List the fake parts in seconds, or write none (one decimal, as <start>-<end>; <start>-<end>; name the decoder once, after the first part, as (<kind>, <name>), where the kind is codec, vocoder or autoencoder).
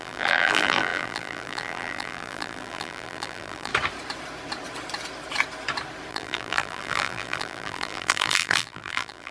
0.0-3.7 (vocoder, BigVGAN v2); 6.1-9.3